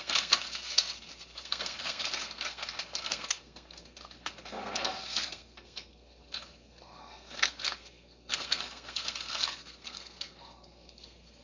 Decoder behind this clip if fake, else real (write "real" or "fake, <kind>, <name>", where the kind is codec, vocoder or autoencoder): fake, codec, SNAC